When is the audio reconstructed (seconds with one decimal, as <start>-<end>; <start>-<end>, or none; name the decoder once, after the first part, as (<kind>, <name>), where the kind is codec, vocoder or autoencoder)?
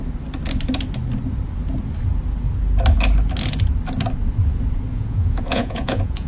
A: 4.9-6.3 (vocoder, Vocos)